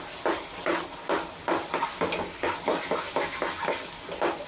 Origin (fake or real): real